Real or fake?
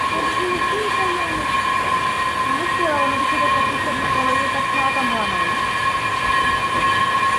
real